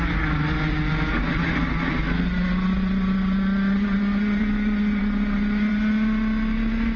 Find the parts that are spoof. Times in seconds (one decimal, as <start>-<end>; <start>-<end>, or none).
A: none